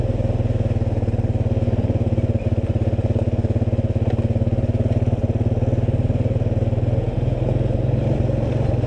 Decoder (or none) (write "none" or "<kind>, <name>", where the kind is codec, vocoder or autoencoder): none